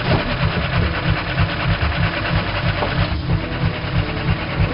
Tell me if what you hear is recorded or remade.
recorded